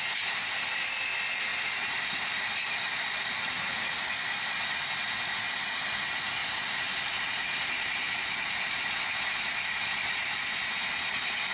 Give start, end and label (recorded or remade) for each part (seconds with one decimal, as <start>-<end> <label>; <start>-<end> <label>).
0.0-1.5 recorded; 1.5-5.1 remade; 5.1-6.4 recorded; 6.4-7.0 remade; 7.0-11.5 recorded